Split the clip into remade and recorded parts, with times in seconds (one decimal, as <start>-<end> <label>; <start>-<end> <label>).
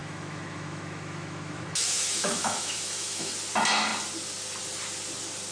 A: 0.0-3.3 remade; 3.3-5.5 recorded